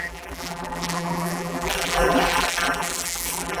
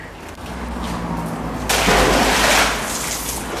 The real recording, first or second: second